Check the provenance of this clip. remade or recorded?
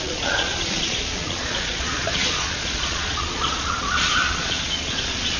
remade